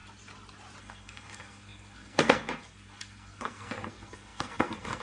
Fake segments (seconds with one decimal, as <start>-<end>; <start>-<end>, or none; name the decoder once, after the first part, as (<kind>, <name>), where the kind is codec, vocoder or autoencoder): 0.8-5.0 (codec, SNAC)